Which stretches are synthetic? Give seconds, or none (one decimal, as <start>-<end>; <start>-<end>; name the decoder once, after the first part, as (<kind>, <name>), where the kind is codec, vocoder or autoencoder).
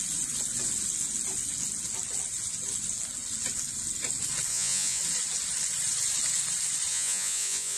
4.5-5.0 (vocoder, Vocos); 6.9-7.8